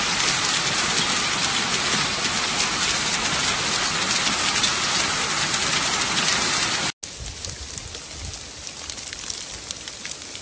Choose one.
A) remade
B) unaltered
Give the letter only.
B